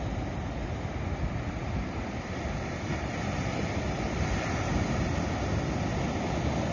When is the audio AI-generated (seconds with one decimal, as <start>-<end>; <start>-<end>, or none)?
none